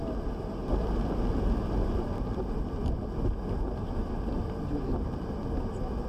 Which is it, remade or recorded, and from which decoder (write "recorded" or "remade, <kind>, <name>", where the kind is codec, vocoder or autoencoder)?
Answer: recorded